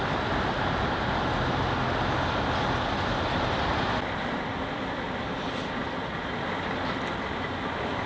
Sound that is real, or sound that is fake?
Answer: real